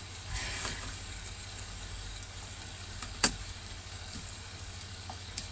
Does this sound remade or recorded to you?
remade